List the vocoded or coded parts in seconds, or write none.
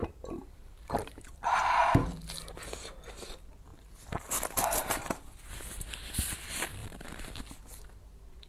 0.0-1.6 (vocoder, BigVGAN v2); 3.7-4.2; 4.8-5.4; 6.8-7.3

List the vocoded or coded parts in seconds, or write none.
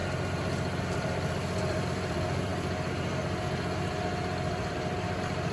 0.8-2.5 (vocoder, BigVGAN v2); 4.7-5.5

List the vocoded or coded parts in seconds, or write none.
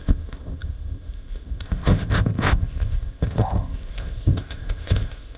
0.0-5.4 (codec, ZipCodec)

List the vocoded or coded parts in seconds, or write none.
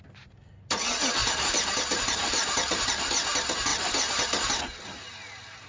1.2-3.0 (vocoder, BigVGAN v2); 3.7-4.6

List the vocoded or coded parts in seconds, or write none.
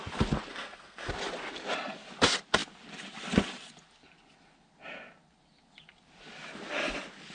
0.5-1.1 (codec, SNAC)